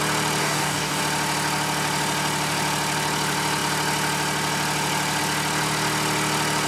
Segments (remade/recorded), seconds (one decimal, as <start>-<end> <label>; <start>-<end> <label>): 0.0-0.4 recorded; 0.4-1.0 remade; 1.0-6.7 recorded